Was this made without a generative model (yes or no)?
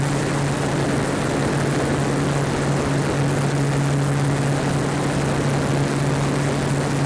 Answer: yes